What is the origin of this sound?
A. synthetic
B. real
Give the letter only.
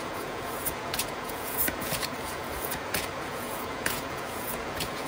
A